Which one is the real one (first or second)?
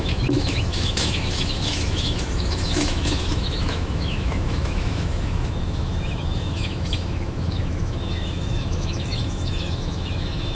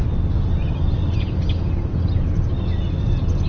second